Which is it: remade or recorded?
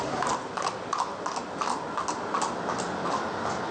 recorded